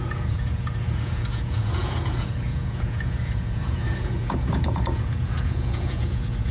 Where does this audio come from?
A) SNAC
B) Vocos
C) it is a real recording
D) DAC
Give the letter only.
B